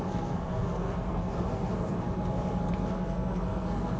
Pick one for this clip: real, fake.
fake